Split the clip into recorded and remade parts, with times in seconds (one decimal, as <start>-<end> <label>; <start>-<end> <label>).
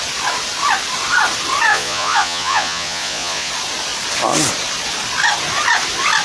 0.0-1.7 recorded; 1.7-3.5 remade; 3.5-6.2 recorded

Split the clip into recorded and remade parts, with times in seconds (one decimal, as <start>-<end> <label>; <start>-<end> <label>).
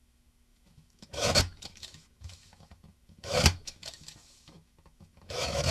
0.0-5.7 remade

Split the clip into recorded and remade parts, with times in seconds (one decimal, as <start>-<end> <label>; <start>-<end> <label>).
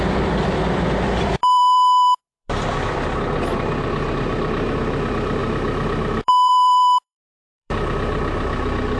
0.0-9.0 remade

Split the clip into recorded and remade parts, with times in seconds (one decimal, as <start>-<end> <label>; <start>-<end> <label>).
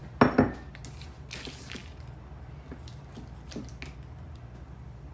0.0-5.1 recorded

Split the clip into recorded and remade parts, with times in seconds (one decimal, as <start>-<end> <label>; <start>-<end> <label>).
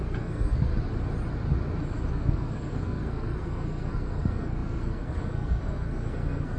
0.0-0.7 remade; 0.7-2.1 recorded; 2.1-6.6 remade